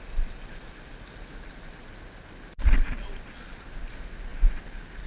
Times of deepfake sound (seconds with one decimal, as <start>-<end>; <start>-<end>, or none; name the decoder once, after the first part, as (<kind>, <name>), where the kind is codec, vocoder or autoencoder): none